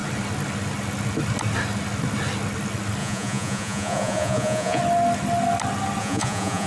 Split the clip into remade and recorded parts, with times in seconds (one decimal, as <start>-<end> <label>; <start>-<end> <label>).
0.0-3.0 recorded; 3.0-4.8 remade; 4.8-6.0 recorded; 6.0-6.7 remade